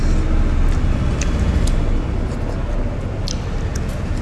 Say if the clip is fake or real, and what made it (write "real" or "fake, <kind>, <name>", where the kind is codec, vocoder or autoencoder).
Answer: real